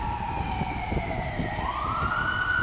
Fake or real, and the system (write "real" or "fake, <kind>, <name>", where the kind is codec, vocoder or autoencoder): real